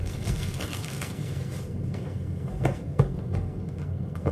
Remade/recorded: remade